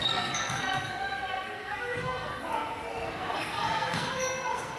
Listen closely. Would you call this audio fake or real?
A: fake